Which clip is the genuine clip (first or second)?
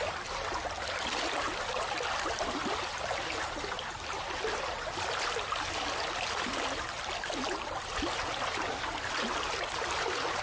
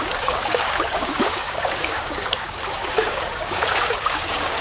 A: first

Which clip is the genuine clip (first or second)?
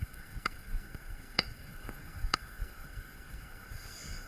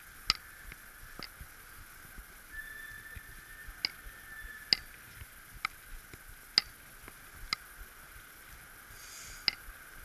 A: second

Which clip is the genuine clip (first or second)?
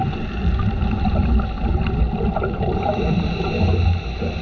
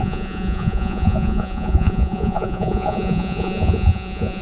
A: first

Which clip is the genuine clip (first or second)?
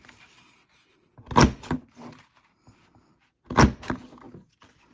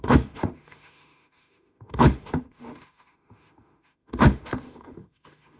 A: first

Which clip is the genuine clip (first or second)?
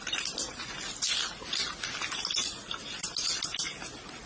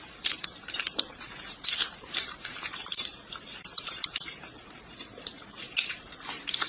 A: first